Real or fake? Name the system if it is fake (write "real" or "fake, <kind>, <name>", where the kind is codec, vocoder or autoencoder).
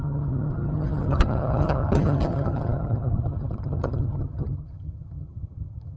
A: fake, vocoder, HiFi-GAN